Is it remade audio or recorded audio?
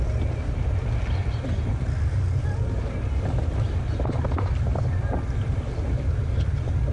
recorded